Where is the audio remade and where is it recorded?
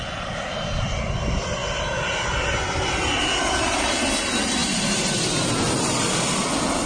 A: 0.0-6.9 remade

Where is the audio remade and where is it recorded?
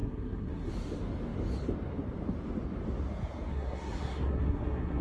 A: 0.0-0.7 remade; 0.7-3.5 recorded; 3.5-5.0 remade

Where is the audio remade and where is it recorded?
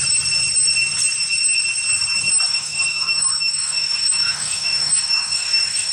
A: 0.0-2.5 recorded; 2.5-5.9 remade